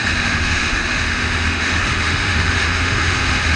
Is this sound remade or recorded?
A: remade